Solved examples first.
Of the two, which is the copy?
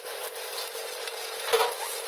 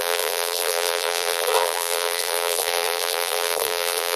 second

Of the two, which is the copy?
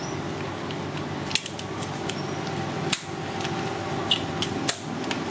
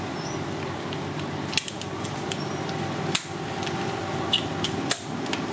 second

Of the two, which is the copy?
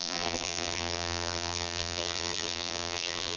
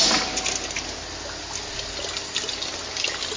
first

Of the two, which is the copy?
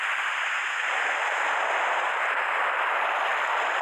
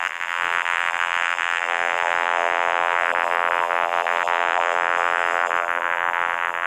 second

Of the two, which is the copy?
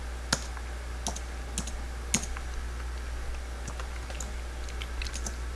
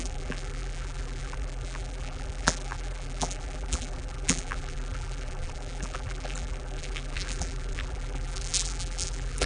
second